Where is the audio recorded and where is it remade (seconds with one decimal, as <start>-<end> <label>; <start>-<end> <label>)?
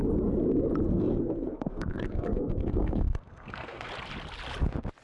0.0-0.9 recorded; 0.9-3.9 remade; 3.9-5.0 recorded